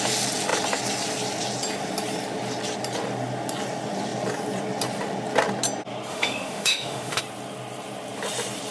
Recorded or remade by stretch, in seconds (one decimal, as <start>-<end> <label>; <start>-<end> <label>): 0.0-6.1 recorded; 6.1-7.2 remade; 7.2-8.7 recorded